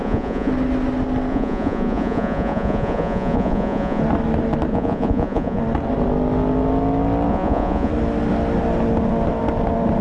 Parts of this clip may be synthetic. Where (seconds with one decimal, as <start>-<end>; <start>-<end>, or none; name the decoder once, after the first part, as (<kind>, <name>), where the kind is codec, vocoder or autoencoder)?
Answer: 0.0-0.5 (vocoder, Vocos); 1.3-4.0; 4.7-5.6; 7.3-7.9